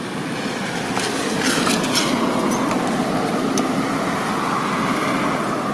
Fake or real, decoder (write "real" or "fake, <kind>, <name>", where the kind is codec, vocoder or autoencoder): real